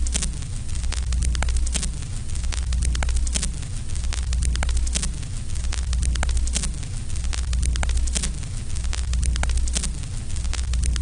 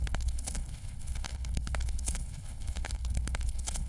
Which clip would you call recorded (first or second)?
first